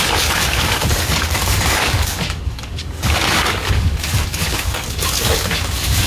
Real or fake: fake